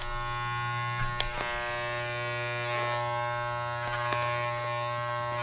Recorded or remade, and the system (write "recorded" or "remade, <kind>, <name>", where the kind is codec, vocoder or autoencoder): recorded